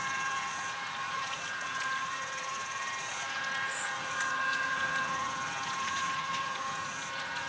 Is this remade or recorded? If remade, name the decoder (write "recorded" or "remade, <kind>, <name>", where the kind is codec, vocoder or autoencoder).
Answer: remade, vocoder, Vocos